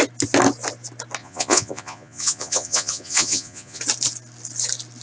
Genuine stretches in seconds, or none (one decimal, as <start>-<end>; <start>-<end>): 0.0-1.2; 3.8-5.0